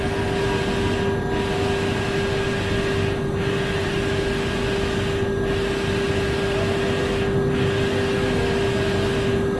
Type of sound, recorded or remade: recorded